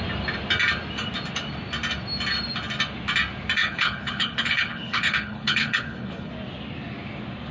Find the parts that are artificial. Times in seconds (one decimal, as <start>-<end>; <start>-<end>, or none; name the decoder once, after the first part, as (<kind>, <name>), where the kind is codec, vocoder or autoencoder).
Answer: 3.6-6.3 (codec, HILCodec)